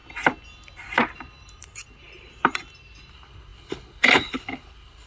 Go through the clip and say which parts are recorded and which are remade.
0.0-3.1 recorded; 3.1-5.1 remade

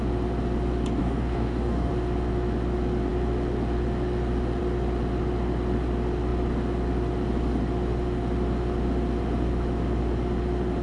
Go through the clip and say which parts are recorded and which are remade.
0.0-1.0 recorded; 1.0-1.9 remade; 1.9-10.8 recorded

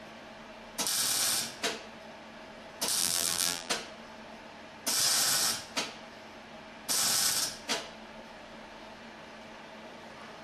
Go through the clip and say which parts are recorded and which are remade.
0.0-3.0 recorded; 3.0-3.7 remade; 3.7-10.4 recorded

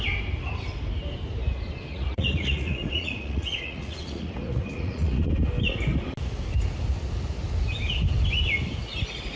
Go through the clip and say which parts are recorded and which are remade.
0.0-1.9 recorded; 1.9-5.3 remade; 5.3-9.4 recorded

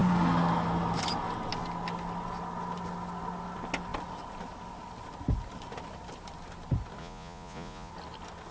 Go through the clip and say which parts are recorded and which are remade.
0.0-7.0 recorded; 7.0-7.9 remade; 7.9-8.5 recorded

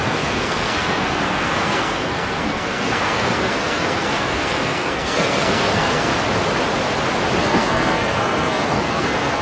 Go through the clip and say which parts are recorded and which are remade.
0.0-6.1 remade; 6.1-7.4 recorded; 7.4-9.4 remade